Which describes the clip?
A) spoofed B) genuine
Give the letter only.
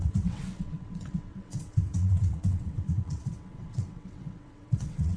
A